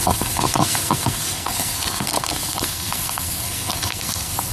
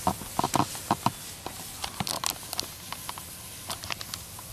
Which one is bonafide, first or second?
second